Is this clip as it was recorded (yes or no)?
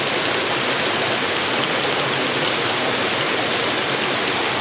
yes